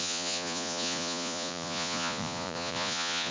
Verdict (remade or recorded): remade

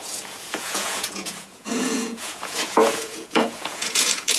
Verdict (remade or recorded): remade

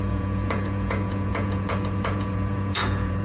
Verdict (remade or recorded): remade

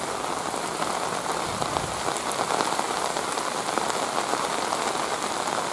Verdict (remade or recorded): recorded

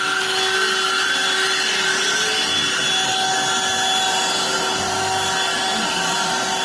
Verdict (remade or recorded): recorded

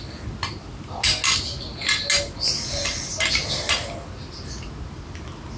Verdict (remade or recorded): recorded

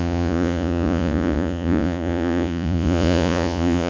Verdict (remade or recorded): remade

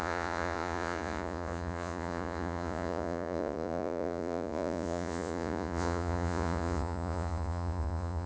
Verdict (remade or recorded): remade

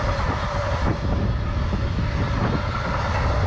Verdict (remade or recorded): recorded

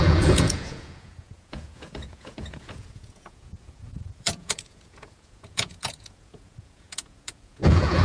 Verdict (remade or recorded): remade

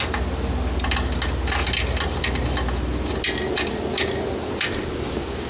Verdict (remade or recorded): recorded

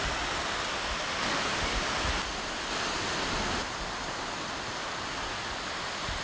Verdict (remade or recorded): recorded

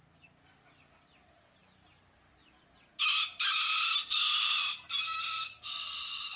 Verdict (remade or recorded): recorded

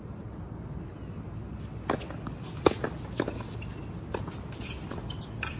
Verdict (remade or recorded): recorded